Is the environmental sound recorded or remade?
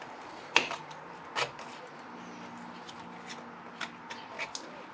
recorded